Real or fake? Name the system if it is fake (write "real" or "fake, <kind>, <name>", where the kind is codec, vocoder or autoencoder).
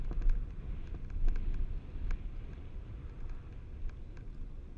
real